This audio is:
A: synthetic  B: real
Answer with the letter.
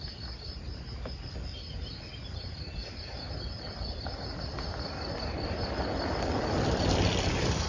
B